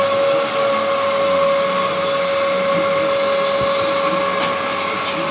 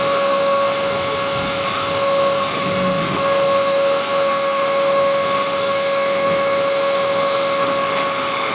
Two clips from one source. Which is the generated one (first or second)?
second